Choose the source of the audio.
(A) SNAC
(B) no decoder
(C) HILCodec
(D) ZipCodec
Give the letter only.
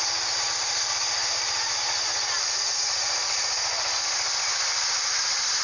B